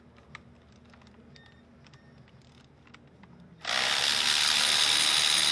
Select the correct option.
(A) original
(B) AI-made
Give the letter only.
A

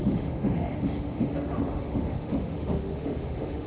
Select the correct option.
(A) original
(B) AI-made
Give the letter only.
B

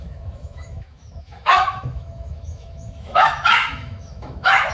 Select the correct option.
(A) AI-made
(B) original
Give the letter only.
A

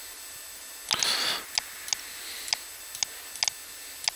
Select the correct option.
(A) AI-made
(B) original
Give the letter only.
B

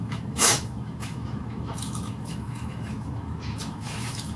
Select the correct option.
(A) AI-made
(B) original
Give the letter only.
A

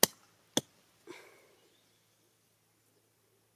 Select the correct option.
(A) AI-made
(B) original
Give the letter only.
B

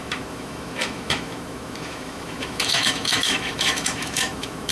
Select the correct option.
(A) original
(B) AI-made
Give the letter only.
B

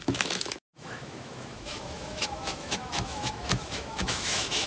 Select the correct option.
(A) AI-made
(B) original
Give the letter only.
A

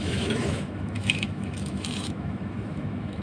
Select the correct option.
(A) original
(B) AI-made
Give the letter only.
B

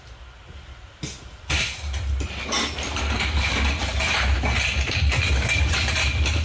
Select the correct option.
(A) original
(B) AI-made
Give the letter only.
A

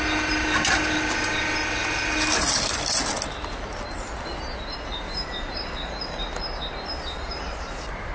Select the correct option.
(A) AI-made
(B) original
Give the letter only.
B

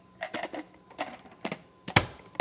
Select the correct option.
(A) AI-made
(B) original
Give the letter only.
B